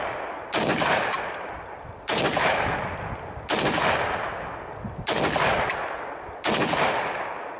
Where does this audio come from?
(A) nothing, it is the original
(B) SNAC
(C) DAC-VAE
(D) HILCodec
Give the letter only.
A